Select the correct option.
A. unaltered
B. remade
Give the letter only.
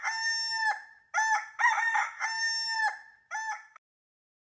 A